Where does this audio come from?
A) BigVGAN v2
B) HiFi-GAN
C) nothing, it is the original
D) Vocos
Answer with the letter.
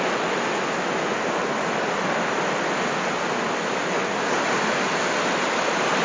C